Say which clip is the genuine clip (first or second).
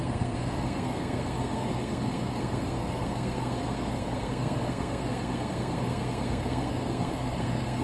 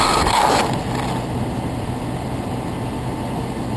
second